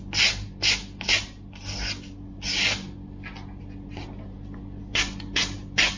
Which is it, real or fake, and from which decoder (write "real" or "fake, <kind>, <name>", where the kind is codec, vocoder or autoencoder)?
real